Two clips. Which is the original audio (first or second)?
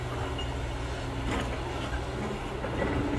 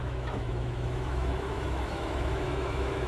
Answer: first